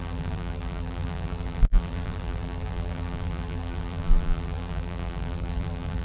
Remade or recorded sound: remade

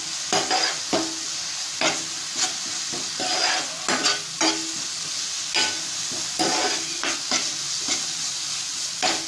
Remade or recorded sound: recorded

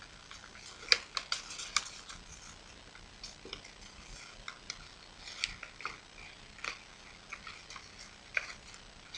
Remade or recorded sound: recorded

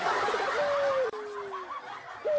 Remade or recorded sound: recorded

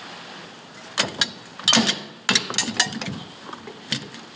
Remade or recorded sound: recorded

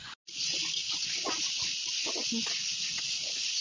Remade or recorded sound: recorded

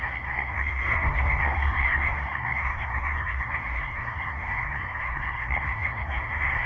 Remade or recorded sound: remade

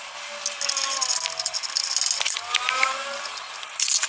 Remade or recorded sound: recorded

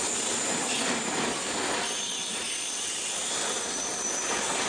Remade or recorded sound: recorded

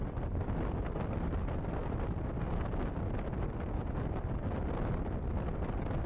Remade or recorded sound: recorded